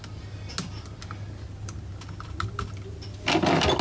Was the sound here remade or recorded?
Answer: recorded